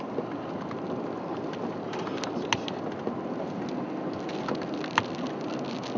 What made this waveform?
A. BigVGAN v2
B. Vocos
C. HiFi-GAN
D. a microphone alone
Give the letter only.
D